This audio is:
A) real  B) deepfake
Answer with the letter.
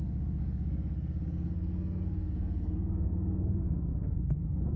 B